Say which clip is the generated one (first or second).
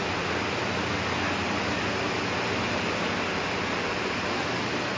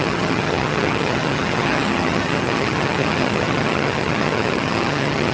second